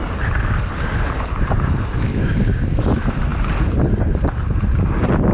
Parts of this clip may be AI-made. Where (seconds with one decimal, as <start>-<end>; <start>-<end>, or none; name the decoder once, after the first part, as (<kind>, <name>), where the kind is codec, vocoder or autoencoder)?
0.5-2.1 (vocoder, BigVGAN v2); 2.9-5.3